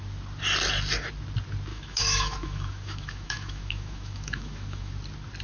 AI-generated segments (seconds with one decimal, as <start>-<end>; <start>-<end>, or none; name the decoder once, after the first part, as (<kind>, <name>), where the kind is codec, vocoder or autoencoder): 1.7-4.9 (autoencoder, DAC-VAE)